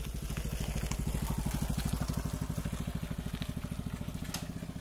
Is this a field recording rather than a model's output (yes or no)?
yes